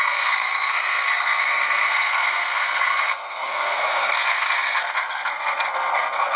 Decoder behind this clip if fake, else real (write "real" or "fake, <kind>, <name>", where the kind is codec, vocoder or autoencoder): fake, codec, SNAC